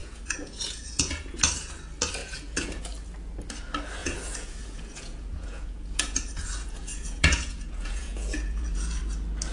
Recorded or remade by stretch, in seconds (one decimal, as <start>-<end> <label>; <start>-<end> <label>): 0.0-1.4 remade; 1.4-2.2 recorded; 2.2-2.8 remade; 2.8-4.0 recorded; 4.0-9.0 remade; 9.0-9.5 recorded